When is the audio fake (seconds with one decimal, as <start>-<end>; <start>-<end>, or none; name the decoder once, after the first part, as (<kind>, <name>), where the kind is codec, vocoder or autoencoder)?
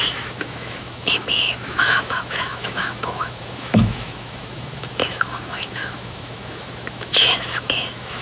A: 0.0-8.2 (autoencoder, DAC-VAE)